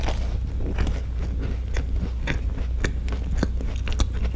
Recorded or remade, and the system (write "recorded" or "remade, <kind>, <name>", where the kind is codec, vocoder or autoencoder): recorded